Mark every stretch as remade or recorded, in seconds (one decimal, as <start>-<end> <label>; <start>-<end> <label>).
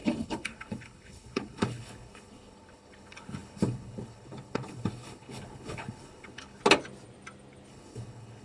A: 0.0-6.6 remade; 6.6-7.7 recorded; 7.7-8.4 remade